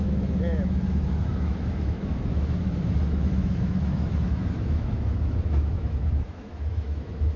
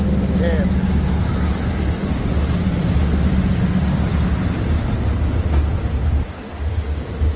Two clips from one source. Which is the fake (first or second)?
first